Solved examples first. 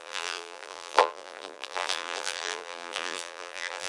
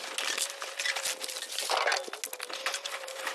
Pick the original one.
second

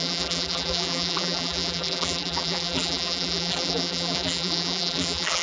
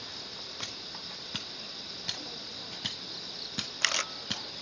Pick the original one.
second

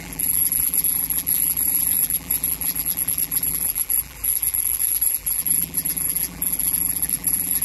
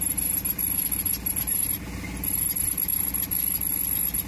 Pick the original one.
second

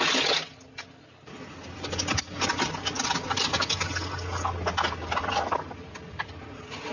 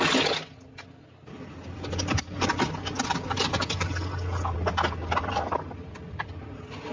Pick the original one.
first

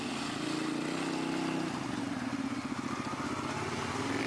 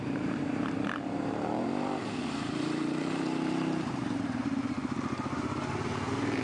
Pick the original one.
first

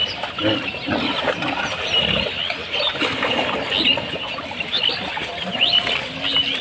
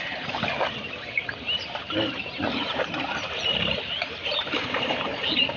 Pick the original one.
first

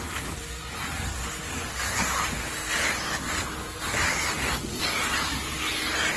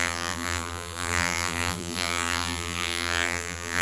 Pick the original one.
first